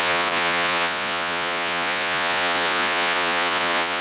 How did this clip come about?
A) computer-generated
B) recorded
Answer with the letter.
A